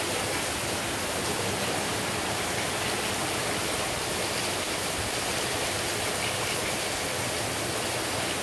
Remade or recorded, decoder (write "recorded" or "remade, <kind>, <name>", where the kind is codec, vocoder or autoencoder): recorded